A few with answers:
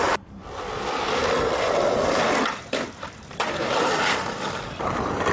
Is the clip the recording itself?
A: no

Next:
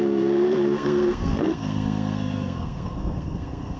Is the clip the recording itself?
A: no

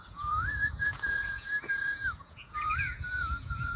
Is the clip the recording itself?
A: no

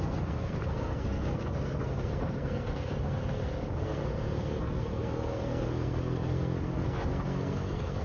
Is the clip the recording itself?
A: no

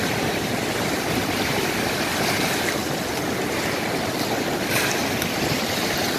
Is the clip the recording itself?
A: yes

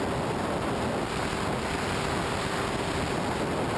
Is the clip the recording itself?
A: yes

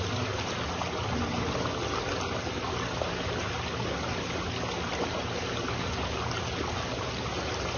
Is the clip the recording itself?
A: yes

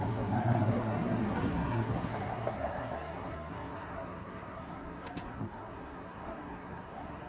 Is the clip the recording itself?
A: no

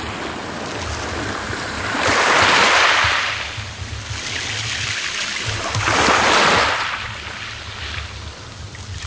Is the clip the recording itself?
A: yes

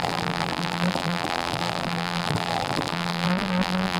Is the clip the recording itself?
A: no